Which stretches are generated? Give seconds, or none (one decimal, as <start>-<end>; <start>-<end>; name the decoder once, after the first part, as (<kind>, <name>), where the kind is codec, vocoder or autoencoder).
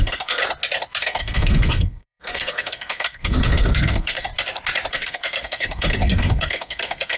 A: 0.0-0.4 (codec, SNAC); 1.0-4.3; 4.9-7.2